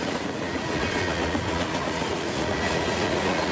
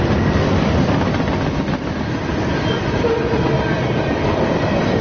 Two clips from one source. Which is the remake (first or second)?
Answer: first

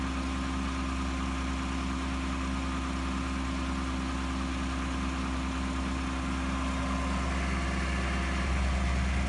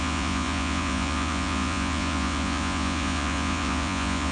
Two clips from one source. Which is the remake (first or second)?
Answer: second